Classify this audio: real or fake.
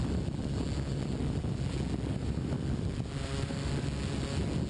real